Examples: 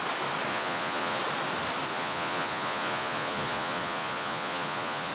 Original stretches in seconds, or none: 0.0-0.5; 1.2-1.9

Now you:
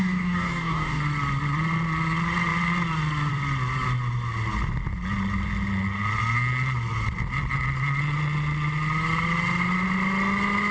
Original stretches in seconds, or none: 1.0-10.7